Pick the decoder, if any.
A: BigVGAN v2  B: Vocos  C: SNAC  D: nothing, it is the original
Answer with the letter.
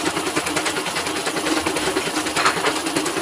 D